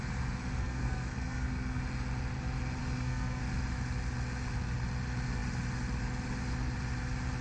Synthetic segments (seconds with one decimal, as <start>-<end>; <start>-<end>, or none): 0.6-1.8; 2.8-3.4